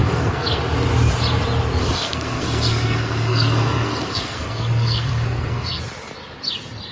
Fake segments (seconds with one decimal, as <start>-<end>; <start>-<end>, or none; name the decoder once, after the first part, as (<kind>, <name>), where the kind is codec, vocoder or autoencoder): 0.0-0.6 (codec, SNAC); 1.8-5.8